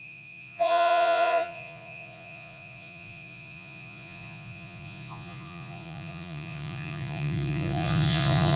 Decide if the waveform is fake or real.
fake